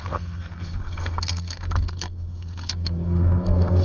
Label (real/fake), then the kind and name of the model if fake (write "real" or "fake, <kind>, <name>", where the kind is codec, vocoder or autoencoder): fake, codec, SNAC